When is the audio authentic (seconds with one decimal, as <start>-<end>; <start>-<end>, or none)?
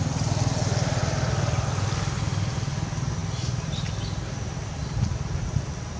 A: 0.0-6.0